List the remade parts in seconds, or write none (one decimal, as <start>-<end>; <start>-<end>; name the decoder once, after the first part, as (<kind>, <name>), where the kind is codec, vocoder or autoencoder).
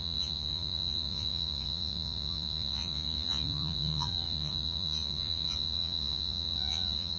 0.0-7.2 (vocoder, Vocos)